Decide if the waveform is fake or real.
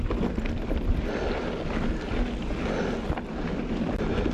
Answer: real